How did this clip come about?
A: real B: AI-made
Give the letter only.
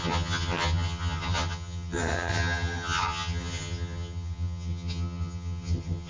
B